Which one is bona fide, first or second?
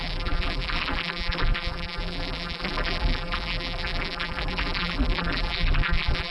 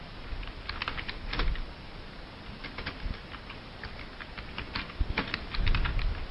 second